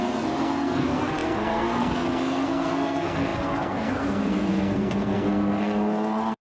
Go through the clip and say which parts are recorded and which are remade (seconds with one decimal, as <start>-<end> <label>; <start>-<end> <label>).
0.0-6.4 remade